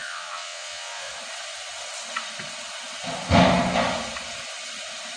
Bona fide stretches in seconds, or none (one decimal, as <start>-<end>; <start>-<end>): 1.1-5.2